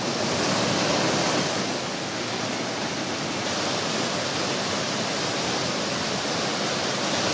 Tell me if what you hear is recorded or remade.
recorded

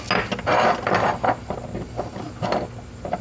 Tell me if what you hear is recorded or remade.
recorded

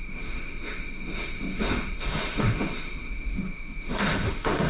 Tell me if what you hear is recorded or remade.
remade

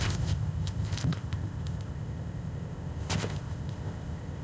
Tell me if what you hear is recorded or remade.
remade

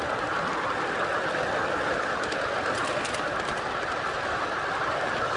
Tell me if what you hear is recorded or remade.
recorded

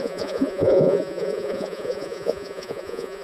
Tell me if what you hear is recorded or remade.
remade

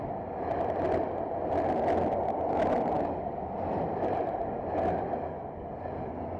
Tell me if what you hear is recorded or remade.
recorded